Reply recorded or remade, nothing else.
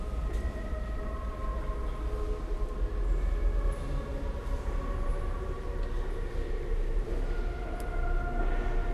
recorded